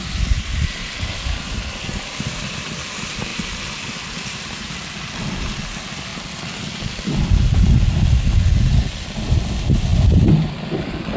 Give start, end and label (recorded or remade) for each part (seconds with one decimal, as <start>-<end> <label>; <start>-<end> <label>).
0.0-11.2 recorded